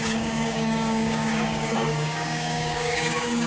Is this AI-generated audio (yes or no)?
yes